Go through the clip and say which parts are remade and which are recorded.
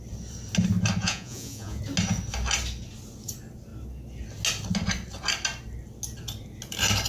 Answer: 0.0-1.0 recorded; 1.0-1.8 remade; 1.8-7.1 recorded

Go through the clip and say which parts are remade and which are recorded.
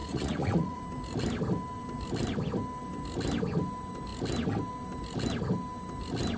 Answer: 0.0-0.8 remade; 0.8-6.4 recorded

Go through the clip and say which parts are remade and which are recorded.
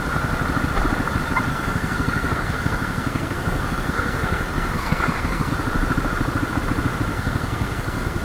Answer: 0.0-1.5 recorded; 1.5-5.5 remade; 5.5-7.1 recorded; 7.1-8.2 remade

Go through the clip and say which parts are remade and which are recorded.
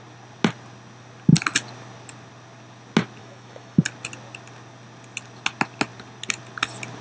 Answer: 0.0-3.2 recorded; 3.2-3.8 remade; 3.8-7.0 recorded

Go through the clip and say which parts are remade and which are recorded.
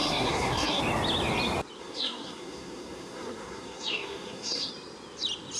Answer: 0.0-0.8 remade; 0.8-1.8 recorded; 1.8-4.7 remade; 4.7-5.6 recorded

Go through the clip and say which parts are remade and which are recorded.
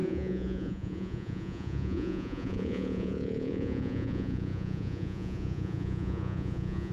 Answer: 0.0-6.9 remade